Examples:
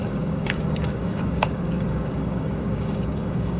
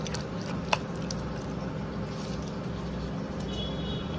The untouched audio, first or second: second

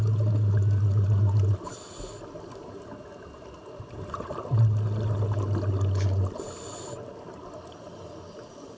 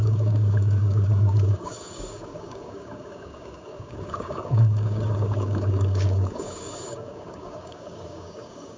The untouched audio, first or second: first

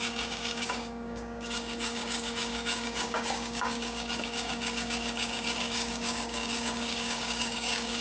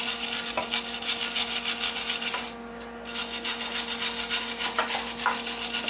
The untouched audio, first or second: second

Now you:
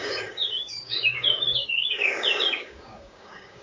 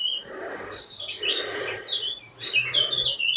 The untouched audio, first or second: second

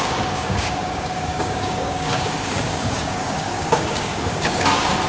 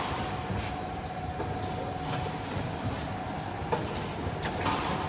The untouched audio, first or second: second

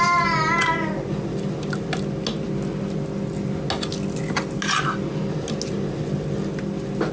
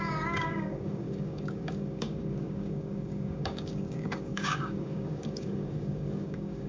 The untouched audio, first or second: first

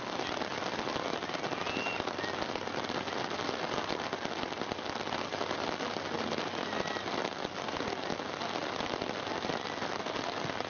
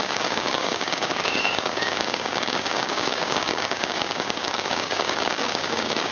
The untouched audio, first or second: first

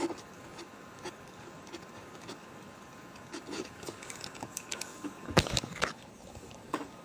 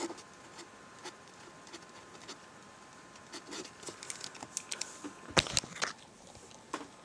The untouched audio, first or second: second